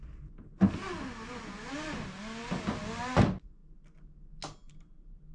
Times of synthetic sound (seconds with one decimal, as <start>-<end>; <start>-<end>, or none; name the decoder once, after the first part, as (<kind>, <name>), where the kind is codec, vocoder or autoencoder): none